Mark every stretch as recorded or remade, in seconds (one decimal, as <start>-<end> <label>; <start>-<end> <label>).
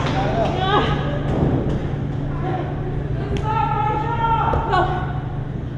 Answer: 0.0-5.8 recorded